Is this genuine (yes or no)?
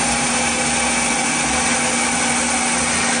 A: yes